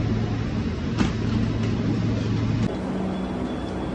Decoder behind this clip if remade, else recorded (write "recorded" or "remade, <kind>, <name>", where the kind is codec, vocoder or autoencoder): recorded